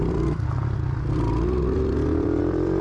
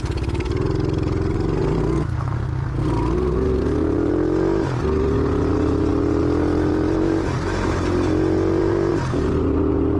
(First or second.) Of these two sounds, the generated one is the first